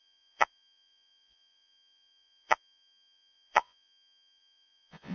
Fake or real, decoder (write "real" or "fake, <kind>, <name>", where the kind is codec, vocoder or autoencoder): fake, vocoder, Vocos